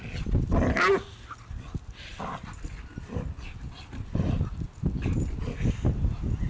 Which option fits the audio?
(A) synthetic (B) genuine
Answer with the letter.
B